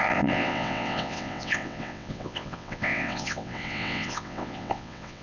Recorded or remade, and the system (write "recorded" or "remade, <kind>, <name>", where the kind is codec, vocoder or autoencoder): remade, vocoder, WaveNeXt